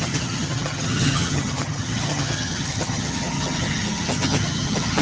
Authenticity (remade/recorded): remade